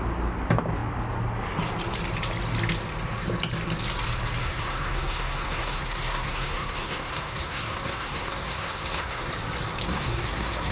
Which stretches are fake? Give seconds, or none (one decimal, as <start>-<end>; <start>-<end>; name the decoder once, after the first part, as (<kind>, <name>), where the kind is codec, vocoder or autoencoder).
4.4-9.3 (codec, SNAC); 9.8-10.7